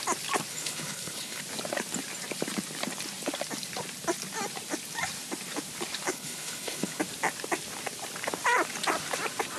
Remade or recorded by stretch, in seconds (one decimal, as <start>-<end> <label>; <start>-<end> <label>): 0.0-0.5 recorded; 0.5-1.4 remade; 1.4-6.1 recorded; 6.1-7.0 remade; 7.0-9.6 recorded